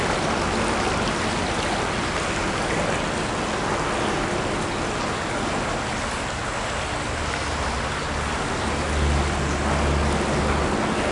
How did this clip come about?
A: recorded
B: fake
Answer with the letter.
A